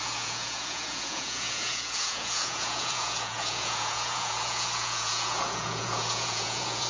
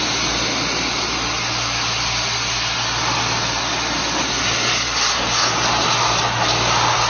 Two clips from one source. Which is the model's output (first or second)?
first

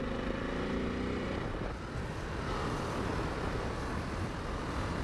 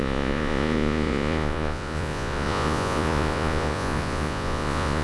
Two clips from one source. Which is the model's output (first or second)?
second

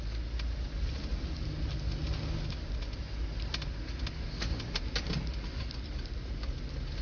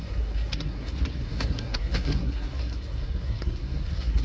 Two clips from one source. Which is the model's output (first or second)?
second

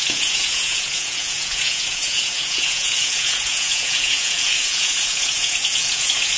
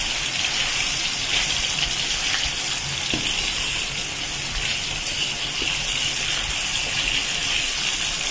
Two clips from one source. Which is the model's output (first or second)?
first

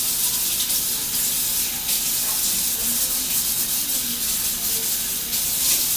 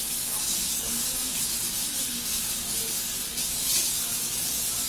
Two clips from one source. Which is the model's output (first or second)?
second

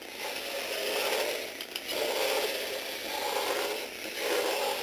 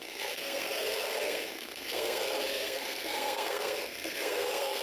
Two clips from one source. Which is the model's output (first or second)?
second